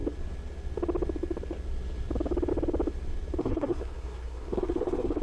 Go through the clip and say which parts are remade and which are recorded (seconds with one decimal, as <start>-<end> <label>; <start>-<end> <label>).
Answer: 0.0-3.4 recorded; 3.4-5.2 remade